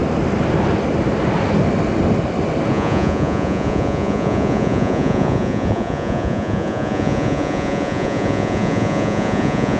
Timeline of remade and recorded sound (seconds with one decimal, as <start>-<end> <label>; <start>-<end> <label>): 0.0-2.7 recorded; 2.7-9.8 remade